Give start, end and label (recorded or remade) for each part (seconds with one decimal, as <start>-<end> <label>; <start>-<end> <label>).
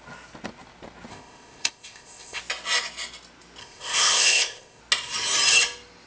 0.0-1.1 recorded; 1.1-2.4 remade; 2.4-3.6 recorded; 3.6-4.8 remade; 4.8-6.1 recorded